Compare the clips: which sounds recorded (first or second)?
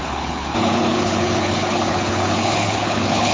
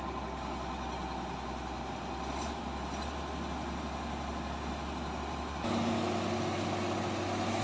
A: second